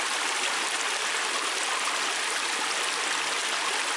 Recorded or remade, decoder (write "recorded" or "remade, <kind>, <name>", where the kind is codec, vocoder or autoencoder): recorded